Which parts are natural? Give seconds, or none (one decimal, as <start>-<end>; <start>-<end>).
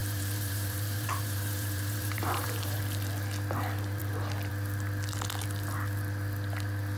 2.8-7.0